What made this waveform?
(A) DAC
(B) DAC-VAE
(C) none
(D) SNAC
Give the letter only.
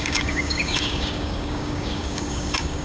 A